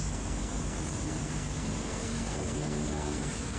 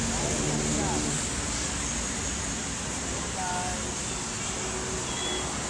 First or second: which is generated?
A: first